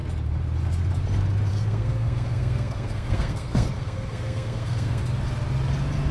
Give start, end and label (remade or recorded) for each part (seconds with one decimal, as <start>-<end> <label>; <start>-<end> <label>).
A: 0.0-1.5 recorded; 1.5-5.0 remade; 5.0-6.1 recorded